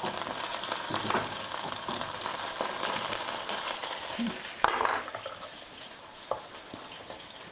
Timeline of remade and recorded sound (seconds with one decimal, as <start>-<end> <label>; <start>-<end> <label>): 0.0-0.5 recorded; 0.5-1.1 remade; 1.1-2.3 recorded; 2.3-4.3 remade; 4.3-5.5 recorded; 5.5-7.1 remade; 7.1-7.5 recorded